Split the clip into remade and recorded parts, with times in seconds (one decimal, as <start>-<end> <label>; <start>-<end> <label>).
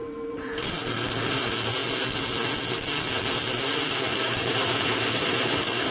0.0-0.7 remade; 0.7-4.1 recorded; 4.1-5.9 remade